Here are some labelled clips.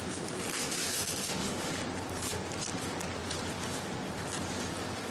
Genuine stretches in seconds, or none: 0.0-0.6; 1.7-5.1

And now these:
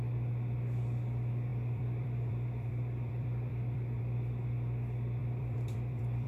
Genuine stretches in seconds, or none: 0.0-1.5; 4.0-5.2